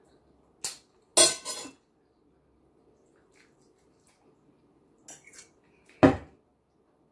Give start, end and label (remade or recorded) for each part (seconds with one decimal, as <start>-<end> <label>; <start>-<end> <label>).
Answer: 0.0-7.1 recorded